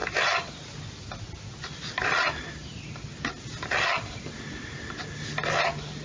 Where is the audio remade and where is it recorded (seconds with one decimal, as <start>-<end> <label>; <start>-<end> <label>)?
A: 0.0-6.0 recorded